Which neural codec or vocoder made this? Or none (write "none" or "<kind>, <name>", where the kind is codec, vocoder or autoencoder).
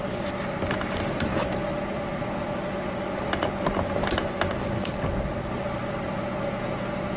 none